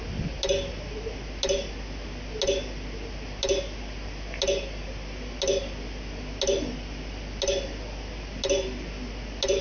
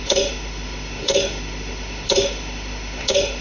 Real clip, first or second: first